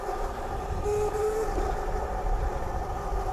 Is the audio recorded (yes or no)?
yes